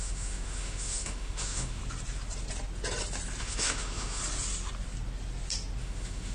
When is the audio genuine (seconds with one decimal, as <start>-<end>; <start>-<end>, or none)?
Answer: 1.8-3.4; 4.2-5.8